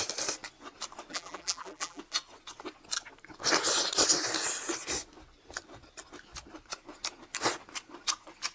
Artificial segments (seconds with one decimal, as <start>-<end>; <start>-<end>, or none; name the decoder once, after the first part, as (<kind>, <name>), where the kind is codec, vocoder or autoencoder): 1.1-2.0 (vocoder, BigVGAN v2)